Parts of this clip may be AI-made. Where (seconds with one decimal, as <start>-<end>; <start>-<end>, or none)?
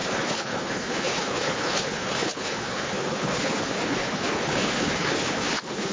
0.0-5.9